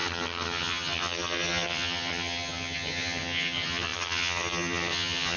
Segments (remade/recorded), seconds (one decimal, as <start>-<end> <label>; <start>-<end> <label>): 0.0-5.4 remade